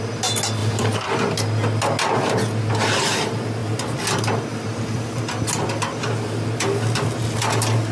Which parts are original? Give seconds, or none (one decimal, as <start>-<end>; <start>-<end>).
0.0-0.6; 1.2-4.5; 5.2-7.9